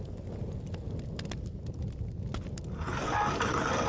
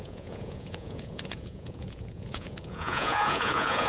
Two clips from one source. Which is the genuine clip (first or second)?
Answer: first